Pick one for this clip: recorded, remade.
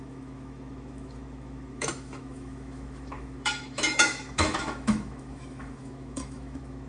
remade